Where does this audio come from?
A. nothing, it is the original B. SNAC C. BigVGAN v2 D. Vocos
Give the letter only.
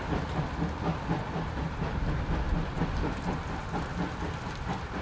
A